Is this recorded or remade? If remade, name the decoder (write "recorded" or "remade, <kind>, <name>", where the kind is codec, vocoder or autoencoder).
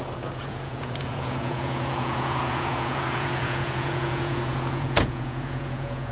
remade, vocoder, Vocos